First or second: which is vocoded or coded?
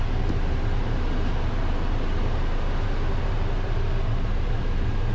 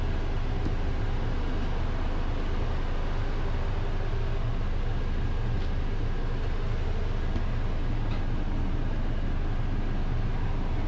first